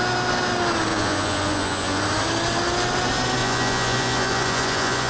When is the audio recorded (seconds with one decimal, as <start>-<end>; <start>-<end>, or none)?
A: 0.0-0.9; 2.0-3.4